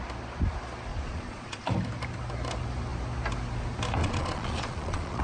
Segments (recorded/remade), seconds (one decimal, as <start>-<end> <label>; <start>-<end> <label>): 0.0-0.9 recorded; 0.9-1.7 remade; 1.7-4.0 recorded; 4.0-5.2 remade